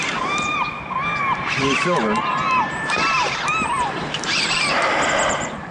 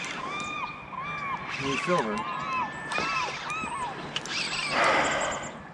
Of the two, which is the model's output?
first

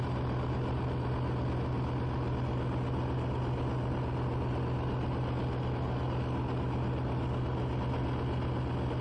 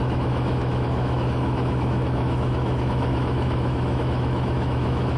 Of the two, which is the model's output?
second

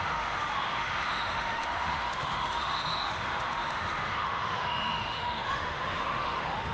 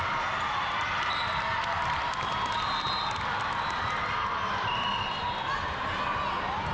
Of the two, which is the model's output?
first